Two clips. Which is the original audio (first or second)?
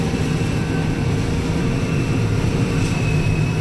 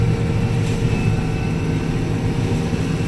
second